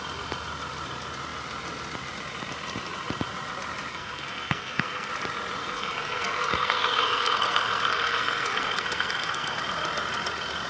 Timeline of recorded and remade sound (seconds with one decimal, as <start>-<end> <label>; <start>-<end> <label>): 0.0-3.9 recorded; 3.9-5.1 remade; 5.1-5.6 recorded; 5.6-9.6 remade; 9.6-10.7 recorded